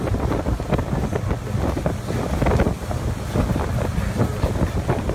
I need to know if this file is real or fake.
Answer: real